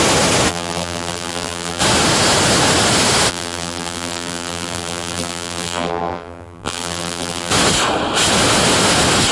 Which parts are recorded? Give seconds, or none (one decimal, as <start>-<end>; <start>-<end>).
0.0-0.5; 1.8-3.3; 7.5-9.3